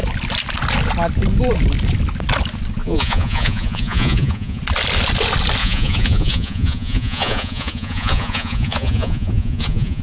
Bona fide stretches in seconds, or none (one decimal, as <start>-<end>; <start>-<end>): 0.0-2.8; 4.6-5.6